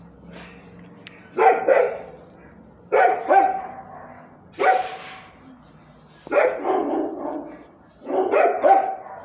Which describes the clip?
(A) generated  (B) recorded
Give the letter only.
B